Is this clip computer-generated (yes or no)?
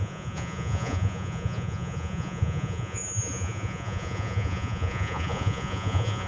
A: yes